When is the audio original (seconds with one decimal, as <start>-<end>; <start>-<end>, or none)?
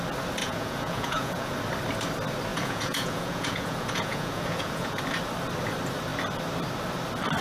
0.0-0.4; 1.5-2.5; 5.0-7.4